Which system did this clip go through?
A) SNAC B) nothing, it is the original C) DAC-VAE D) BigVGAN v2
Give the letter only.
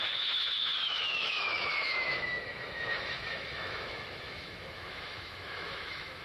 C